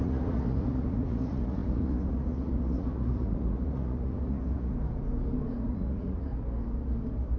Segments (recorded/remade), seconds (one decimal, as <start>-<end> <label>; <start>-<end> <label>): 0.0-4.7 remade; 4.7-5.7 recorded; 5.7-6.3 remade; 6.3-7.4 recorded